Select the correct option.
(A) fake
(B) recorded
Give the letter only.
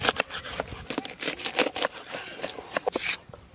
B